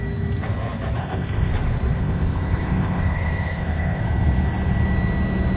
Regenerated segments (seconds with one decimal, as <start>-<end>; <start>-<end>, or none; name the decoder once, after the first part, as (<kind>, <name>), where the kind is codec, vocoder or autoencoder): 1.0-1.5 (codec, ZipCodec); 2.0-4.0